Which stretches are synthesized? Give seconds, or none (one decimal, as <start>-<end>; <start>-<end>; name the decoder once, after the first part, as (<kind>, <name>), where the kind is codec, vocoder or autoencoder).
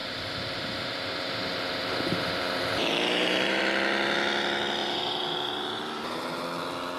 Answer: 0.0-3.6 (vocoder, BigVGAN v2); 4.8-6.4